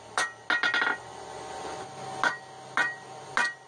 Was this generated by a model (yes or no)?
no